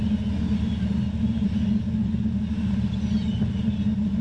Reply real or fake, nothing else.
real